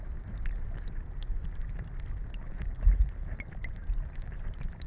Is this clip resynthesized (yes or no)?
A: no